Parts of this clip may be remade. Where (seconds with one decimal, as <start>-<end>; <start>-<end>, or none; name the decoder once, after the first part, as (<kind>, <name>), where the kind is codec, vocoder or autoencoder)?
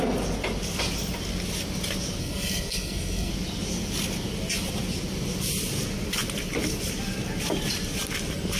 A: 2.2-3.3 (codec, SNAC)